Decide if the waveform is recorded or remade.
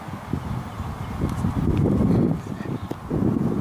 recorded